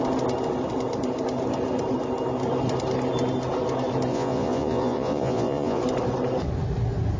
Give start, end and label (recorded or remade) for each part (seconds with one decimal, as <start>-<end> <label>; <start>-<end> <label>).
0.0-4.1 recorded; 4.1-5.8 remade; 5.8-7.2 recorded